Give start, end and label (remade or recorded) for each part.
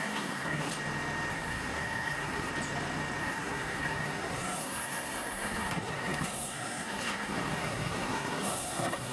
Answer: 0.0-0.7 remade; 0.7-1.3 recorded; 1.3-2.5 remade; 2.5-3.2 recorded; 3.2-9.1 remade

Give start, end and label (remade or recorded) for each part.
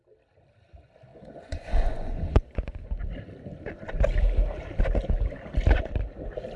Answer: 0.0-1.1 recorded; 1.1-3.0 remade; 3.0-6.6 recorded